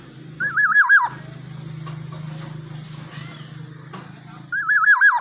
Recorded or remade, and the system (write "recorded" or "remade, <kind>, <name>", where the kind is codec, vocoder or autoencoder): recorded